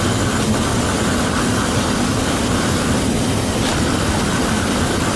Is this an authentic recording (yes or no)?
yes